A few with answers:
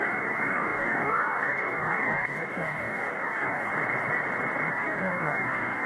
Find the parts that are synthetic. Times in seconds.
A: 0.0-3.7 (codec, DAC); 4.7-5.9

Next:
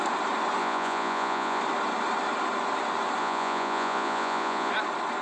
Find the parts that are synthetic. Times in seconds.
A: 0.6-1.6 (vocoder, Vocos); 3.2-4.7

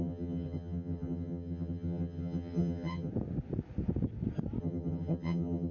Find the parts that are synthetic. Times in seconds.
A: 0.0-3.1 (vocoder, HiFi-GAN); 4.6-5.7

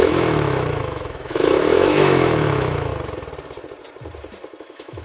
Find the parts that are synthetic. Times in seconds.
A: 0.0-2.9 (autoencoder, DAC-VAE); 4.6-5.0

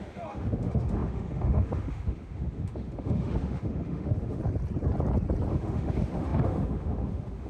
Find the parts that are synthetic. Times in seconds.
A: 0.0-4.4 (autoencoder, DAC-VAE); 5.5-7.5